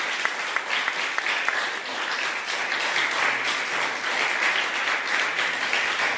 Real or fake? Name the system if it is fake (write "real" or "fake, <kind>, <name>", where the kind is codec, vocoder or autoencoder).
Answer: real